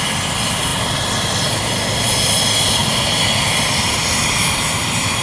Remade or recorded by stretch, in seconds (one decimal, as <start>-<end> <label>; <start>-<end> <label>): 0.0-0.7 remade; 0.7-2.0 recorded; 2.0-2.8 remade; 2.8-5.2 recorded